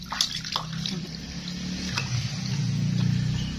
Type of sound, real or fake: real